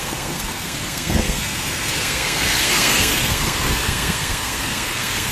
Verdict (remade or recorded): remade